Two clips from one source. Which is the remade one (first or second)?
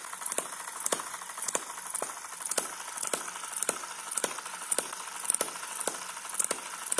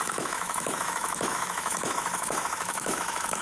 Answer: second